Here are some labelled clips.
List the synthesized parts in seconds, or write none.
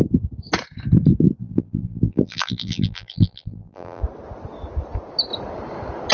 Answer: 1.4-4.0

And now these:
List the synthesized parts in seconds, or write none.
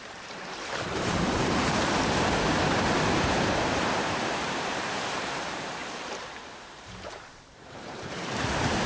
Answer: 0.0-1.6; 2.9-8.9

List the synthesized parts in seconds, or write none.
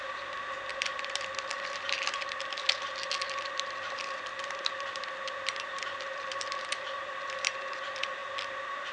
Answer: none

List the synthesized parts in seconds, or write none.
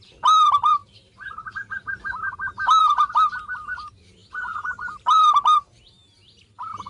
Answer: 0.0-4.2; 4.8-6.0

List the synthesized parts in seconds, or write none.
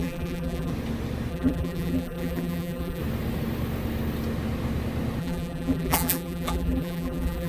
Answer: 0.0-0.7; 1.3-3.0; 5.2-7.5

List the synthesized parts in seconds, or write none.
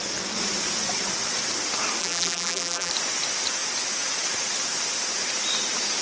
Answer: 2.0-2.9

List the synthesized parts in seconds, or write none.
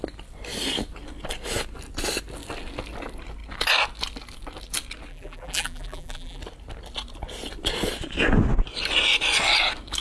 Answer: 5.1-6.4